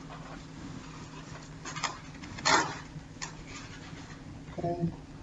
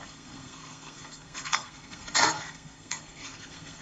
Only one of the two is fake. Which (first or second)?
second